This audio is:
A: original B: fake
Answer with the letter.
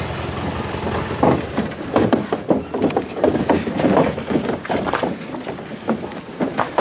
A